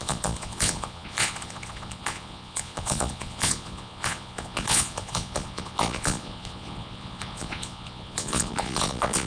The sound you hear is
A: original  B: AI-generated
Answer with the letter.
B